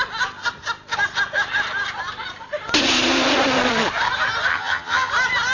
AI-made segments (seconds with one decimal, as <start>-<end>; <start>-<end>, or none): 4.5-5.1